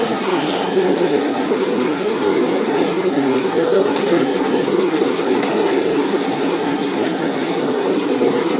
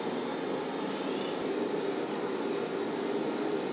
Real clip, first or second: second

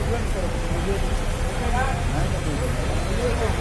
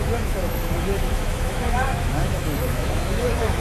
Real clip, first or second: first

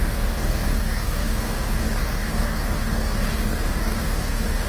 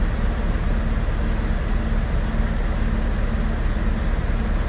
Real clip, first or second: second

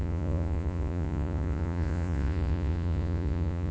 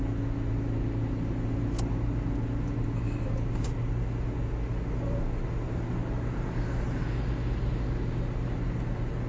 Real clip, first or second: second